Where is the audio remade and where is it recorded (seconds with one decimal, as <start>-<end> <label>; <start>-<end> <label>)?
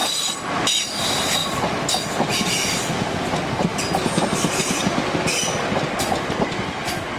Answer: 0.0-0.6 remade; 0.6-3.7 recorded; 3.7-4.7 remade; 4.7-7.2 recorded